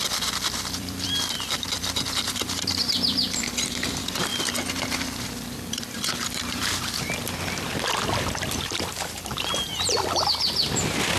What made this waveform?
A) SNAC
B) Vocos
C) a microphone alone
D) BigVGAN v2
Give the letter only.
D